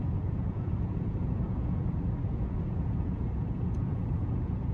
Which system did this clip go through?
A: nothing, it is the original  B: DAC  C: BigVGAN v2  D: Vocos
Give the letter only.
D